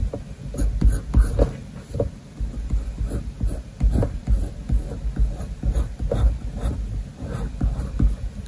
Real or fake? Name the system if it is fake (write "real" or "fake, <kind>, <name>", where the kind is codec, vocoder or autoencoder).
real